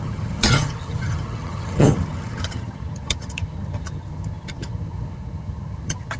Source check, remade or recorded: remade